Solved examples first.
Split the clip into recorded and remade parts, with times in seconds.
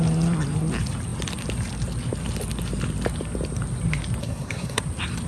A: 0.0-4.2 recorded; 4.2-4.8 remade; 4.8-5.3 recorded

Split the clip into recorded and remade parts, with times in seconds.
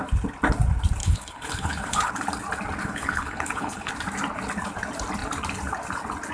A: 0.0-1.0 recorded; 1.0-2.1 remade; 2.1-2.8 recorded; 2.8-3.9 remade; 3.9-6.3 recorded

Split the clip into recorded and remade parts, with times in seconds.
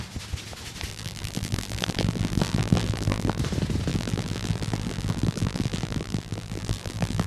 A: 0.0-0.9 recorded; 0.9-3.4 remade; 3.4-3.9 recorded; 3.9-7.3 remade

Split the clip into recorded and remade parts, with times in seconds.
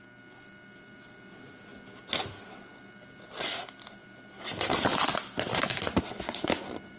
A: 0.0-7.0 recorded